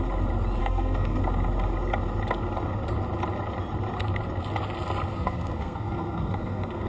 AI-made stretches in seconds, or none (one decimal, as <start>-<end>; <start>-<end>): 0.6-1.2; 5.1-6.9